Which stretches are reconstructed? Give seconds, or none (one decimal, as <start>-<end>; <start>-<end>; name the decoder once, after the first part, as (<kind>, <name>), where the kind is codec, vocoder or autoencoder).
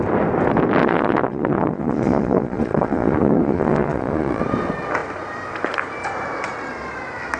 0.8-4.4 (vocoder, Vocos)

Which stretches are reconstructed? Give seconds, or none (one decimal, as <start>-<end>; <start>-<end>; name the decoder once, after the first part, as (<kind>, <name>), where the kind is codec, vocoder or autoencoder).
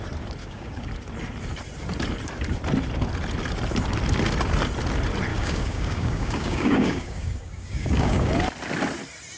0.4-0.9 (codec, DAC); 5.3-8.3